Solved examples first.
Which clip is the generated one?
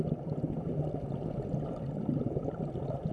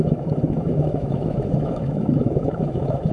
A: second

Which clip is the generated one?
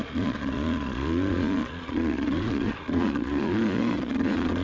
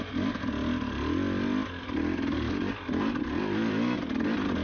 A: first